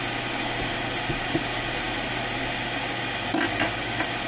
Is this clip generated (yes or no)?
no